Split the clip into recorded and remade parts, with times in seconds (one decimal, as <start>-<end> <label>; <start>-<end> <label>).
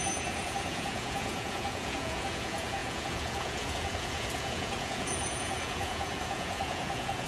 0.0-7.3 remade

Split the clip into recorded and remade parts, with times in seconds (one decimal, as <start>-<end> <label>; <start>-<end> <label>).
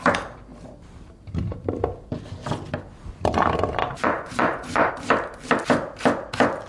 0.0-3.8 recorded; 3.8-4.9 remade; 4.9-6.7 recorded